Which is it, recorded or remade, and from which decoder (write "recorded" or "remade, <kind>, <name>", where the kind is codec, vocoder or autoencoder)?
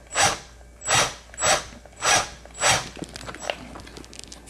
recorded